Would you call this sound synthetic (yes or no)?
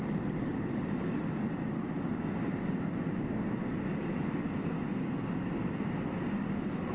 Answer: no